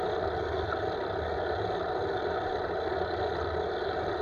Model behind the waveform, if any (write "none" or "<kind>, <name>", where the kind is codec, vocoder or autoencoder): none